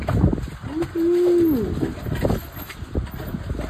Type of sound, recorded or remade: recorded